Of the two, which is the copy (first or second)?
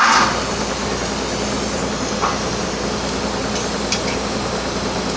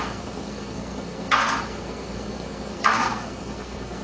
second